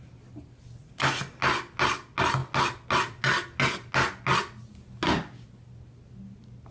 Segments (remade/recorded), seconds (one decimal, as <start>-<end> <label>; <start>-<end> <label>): 0.0-6.7 recorded